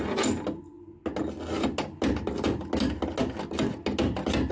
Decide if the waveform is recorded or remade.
recorded